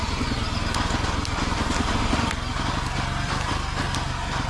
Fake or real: real